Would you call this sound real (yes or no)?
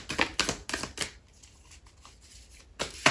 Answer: yes